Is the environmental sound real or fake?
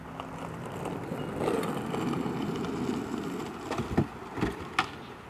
real